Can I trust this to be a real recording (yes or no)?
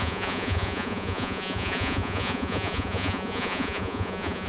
no